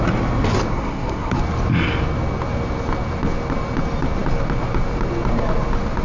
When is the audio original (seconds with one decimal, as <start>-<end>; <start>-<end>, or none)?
0.0-0.7; 1.4-6.0